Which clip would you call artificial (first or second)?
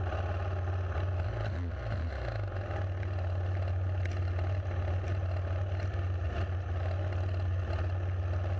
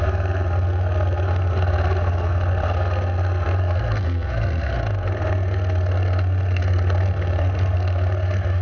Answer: second